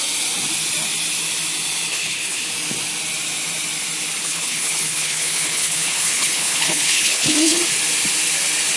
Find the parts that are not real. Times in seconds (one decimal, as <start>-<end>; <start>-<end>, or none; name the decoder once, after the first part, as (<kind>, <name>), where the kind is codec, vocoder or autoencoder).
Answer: 1.9-2.5 (codec, HILCodec); 4.2-7.6